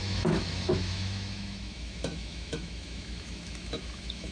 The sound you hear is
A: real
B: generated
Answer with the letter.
B